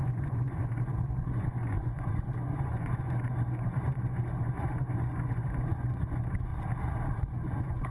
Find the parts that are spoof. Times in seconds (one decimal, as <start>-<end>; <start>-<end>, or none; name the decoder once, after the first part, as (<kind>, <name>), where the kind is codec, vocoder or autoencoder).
0.0-6.5 (vocoder, Vocos); 7.2-7.9